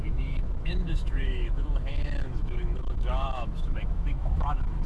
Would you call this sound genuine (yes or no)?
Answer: no